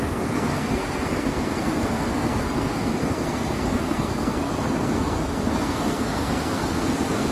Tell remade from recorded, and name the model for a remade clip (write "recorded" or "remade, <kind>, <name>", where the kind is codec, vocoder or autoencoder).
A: remade, codec, SNAC